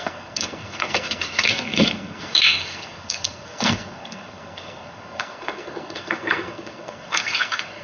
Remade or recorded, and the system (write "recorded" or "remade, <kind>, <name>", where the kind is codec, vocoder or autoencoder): remade, codec, SNAC